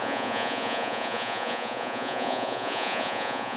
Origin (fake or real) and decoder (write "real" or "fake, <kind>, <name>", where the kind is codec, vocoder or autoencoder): fake, vocoder, Vocos